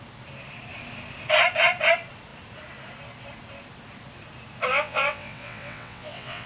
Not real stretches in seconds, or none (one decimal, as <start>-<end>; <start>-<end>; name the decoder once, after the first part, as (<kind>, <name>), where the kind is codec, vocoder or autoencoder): 4.7-6.5 (vocoder, WaveNeXt)